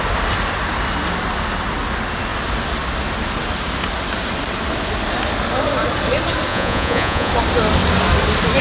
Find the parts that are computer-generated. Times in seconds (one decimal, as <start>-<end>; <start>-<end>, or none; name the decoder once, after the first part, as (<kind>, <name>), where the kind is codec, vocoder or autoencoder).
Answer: 6.5-7.3 (vocoder, Vocos)